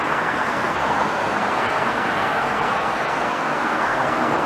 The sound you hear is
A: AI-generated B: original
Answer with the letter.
A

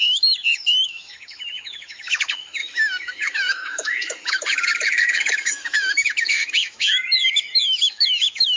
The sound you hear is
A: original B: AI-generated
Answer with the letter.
B